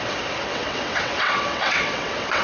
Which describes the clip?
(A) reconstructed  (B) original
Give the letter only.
A